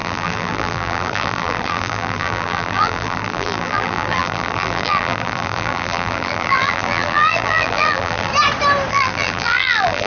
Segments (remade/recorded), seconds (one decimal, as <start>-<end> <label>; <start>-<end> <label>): 0.0-8.3 remade; 8.3-8.9 recorded; 8.9-10.1 remade